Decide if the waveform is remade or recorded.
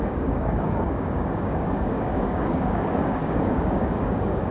remade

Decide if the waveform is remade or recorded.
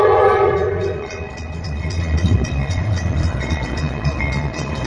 remade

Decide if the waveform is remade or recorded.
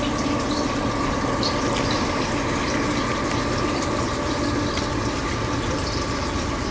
recorded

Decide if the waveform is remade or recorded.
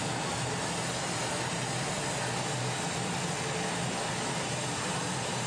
recorded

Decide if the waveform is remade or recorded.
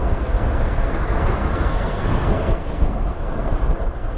remade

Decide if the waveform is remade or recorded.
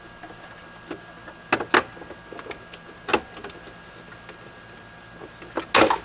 recorded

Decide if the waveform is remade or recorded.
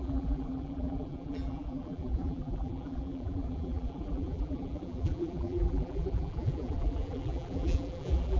remade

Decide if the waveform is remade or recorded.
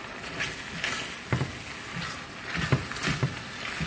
recorded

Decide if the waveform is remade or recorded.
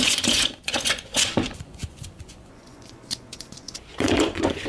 remade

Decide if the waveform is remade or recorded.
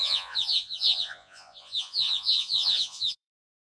remade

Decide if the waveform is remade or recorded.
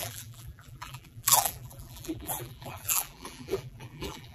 remade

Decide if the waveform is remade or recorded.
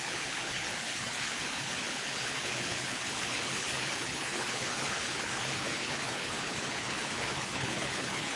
remade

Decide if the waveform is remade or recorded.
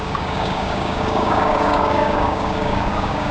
remade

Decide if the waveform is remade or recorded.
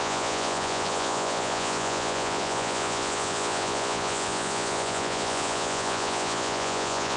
remade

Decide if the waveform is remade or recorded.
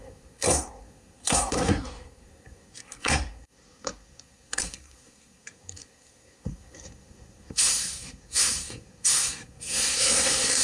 remade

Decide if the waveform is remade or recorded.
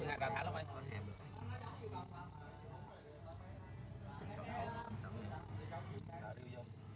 recorded